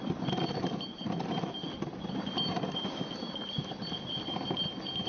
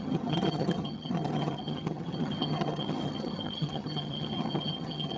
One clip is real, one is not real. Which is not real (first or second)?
second